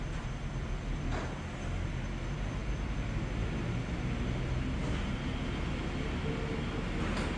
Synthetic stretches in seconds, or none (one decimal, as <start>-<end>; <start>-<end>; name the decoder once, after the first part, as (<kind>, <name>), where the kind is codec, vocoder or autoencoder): none